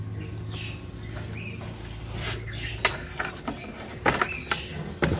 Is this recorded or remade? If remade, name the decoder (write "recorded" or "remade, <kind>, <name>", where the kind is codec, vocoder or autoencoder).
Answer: recorded